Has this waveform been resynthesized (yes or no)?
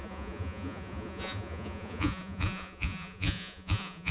yes